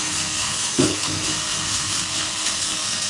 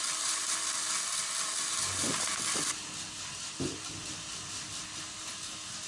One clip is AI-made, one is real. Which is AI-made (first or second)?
first